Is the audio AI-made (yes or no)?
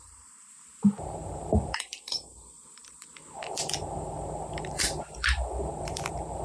yes